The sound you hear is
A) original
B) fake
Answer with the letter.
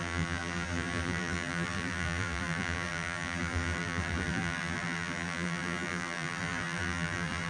B